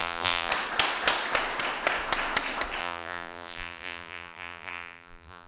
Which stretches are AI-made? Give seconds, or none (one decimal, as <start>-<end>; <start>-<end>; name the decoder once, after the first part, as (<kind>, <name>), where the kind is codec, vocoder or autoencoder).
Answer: 0.0-0.5 (vocoder, BigVGAN v2); 2.8-5.5